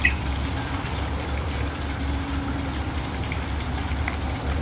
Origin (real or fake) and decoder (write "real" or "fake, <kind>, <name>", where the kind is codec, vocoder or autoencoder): real